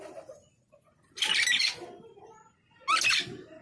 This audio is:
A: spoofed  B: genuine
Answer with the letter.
B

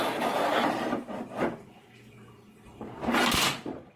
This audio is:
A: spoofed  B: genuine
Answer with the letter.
A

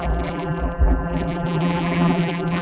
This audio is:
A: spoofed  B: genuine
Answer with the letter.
A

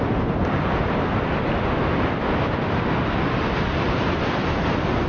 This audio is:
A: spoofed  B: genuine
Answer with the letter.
B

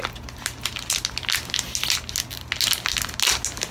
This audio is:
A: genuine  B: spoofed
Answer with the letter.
A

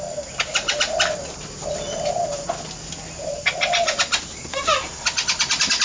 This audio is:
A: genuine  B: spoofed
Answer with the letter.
A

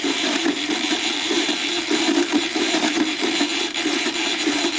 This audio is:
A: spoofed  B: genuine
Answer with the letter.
A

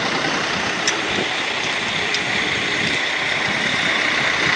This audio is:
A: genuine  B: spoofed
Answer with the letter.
B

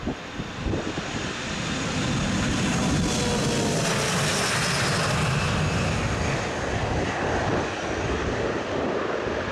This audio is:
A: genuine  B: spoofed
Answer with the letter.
A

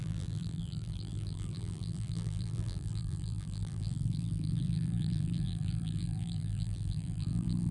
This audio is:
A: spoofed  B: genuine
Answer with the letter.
A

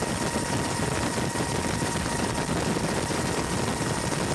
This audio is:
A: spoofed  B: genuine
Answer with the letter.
B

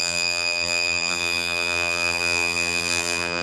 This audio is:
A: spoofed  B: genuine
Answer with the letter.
A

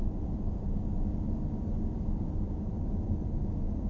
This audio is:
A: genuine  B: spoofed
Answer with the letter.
A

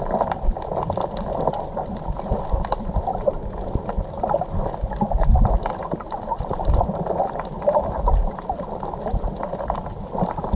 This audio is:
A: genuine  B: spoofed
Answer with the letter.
B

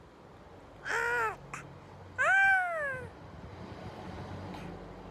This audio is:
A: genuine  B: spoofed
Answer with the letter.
A